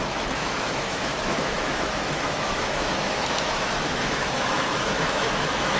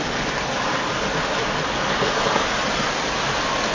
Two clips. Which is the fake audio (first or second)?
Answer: first